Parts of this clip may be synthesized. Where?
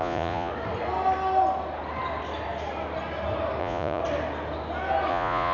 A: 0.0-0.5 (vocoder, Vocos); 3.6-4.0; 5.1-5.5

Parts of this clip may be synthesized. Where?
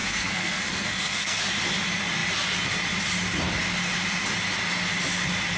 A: 0.0-1.4 (codec, SNAC)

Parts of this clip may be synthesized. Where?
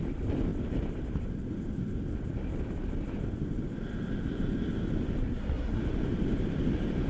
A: 5.2-5.8 (codec, SNAC)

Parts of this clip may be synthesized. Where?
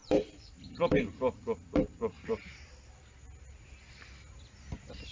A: 0.0-2.7 (vocoder, BigVGAN v2)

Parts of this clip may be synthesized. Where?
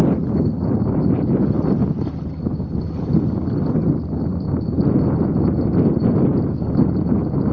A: none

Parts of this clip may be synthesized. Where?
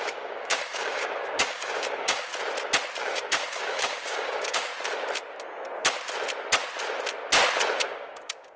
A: 0.0-2.3 (codec, DAC); 3.0-4.7; 7.8-8.6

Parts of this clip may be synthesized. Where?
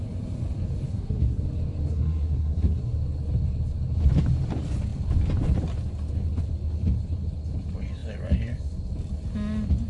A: 0.9-1.4 (codec, SNAC); 1.9-2.8